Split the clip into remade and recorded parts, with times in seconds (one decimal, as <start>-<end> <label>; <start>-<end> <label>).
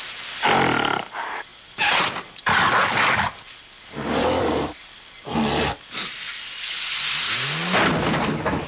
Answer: 0.0-8.7 recorded